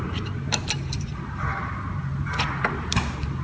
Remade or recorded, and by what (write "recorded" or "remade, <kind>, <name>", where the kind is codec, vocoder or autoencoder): remade, vocoder, BigVGAN v2